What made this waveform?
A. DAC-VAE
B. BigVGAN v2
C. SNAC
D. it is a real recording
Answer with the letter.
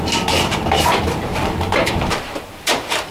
B